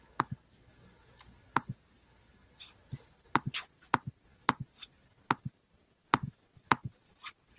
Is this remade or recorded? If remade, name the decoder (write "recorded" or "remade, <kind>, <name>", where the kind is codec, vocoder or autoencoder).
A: recorded